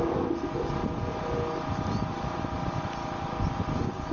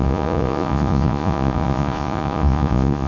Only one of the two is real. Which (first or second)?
first